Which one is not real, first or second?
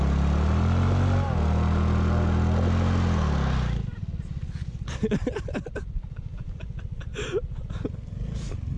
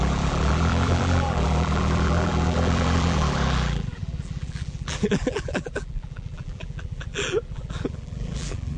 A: second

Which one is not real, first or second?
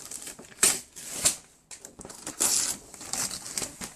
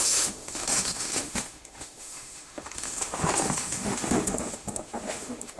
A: second